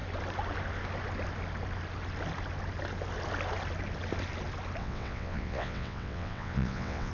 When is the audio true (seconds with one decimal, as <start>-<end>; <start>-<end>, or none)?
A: 0.0-4.8